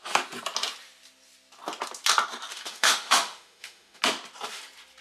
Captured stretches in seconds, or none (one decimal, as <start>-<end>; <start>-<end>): 0.0-2.5; 4.0-5.0